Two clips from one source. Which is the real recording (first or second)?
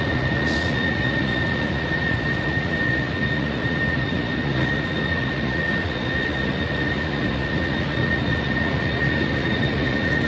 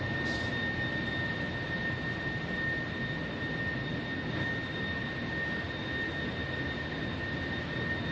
second